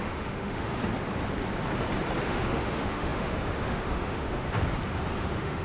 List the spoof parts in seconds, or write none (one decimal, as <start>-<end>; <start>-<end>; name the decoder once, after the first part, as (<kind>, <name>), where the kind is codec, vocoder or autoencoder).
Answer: 0.0-0.8 (autoencoder, DAC-VAE); 2.2-4.6; 5.1-5.6